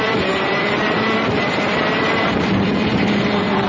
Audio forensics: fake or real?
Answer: fake